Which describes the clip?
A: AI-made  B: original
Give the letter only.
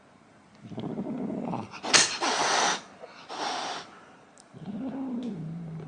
B